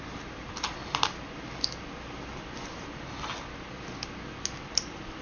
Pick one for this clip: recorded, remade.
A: recorded